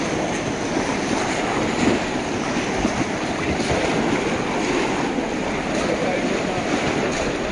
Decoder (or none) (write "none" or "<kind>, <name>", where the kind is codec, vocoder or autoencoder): none